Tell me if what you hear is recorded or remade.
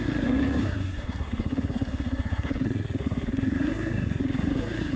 remade